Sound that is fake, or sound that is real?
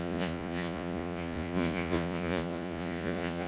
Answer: fake